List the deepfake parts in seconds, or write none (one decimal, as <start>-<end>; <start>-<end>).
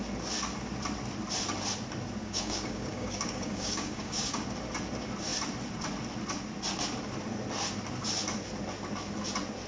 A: 2.2-4.4